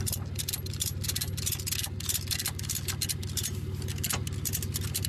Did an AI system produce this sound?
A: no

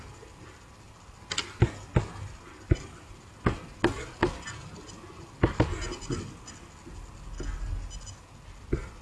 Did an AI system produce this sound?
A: no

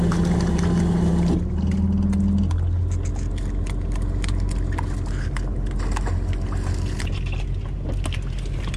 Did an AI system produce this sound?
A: no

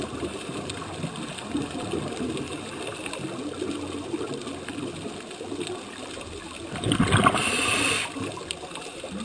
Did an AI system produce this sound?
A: no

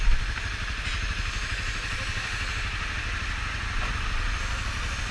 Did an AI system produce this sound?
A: no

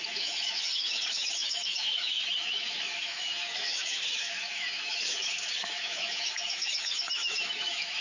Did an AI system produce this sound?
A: yes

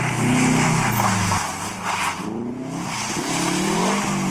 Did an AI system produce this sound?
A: no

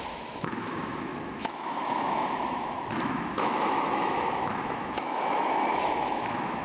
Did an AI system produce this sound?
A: yes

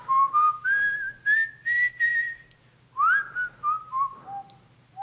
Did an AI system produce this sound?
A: no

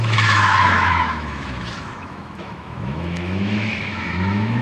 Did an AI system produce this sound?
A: yes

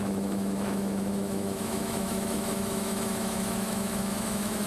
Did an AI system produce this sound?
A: yes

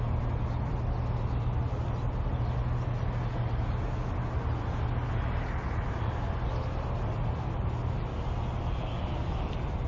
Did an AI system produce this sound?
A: no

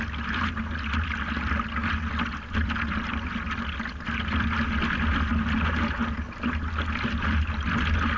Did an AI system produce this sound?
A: no